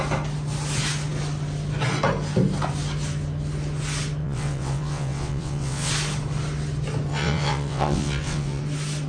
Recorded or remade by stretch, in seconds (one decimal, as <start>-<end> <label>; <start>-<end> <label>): 0.0-4.2 recorded; 4.2-5.9 remade; 5.9-7.1 recorded; 7.1-8.6 remade; 8.6-9.1 recorded